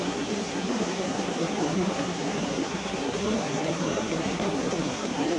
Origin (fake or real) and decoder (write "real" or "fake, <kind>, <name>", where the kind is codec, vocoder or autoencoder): fake, codec, SNAC